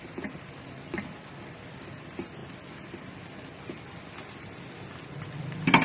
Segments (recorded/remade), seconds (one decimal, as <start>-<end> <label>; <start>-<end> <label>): 0.0-5.8 recorded